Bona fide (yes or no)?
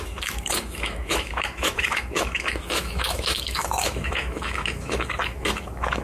no